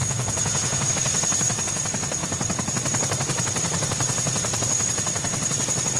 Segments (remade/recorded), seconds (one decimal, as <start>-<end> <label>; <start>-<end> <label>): 0.0-0.9 remade; 0.9-6.0 recorded